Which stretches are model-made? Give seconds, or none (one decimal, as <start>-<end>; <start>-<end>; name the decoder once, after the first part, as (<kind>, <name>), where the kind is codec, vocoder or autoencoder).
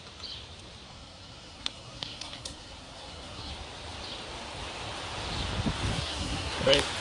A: 0.9-3.5 (codec, SNAC); 5.9-6.6